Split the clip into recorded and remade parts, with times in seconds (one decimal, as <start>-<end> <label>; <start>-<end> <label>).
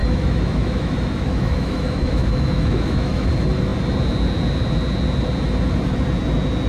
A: 0.0-3.3 remade; 3.3-6.7 recorded